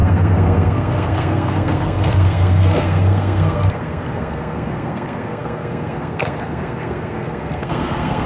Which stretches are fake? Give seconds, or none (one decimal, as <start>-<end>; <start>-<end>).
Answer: 0.0-8.3